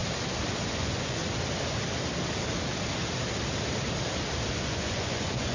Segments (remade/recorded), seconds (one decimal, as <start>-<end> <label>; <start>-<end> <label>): 0.0-0.7 recorded; 0.7-1.2 remade; 1.2-4.5 recorded; 4.5-5.5 remade